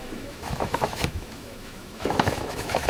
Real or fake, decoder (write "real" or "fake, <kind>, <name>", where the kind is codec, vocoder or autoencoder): fake, autoencoder, DAC-VAE